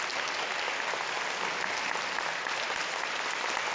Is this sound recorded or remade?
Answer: recorded